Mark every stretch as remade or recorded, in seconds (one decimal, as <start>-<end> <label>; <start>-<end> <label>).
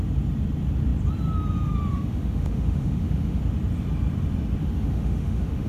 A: 0.0-1.9 recorded; 1.9-3.4 remade; 3.4-4.6 recorded; 4.6-5.7 remade